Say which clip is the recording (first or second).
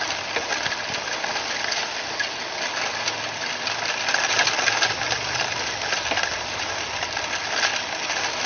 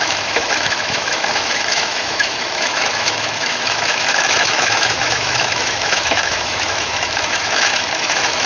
first